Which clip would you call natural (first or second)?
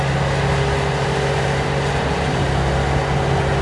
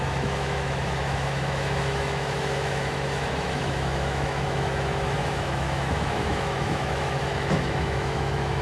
first